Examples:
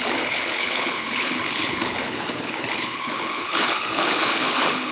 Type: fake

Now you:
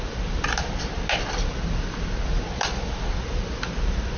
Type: real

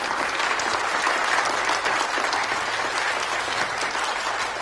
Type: real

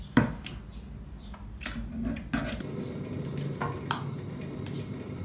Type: real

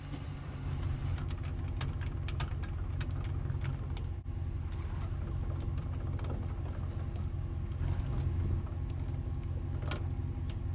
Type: real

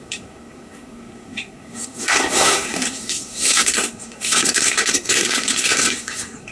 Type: fake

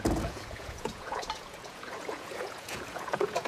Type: fake